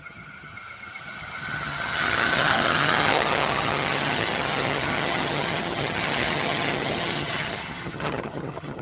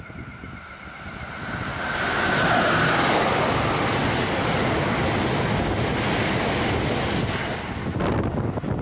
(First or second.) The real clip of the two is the second